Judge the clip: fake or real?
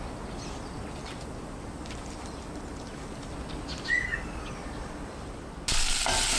real